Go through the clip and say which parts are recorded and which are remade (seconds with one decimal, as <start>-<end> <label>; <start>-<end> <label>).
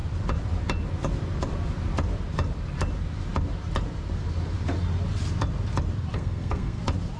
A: 0.0-6.1 recorded; 6.1-6.8 remade; 6.8-7.2 recorded